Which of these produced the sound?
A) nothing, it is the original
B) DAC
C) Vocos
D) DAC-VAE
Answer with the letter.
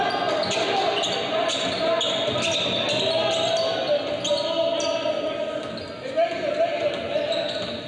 A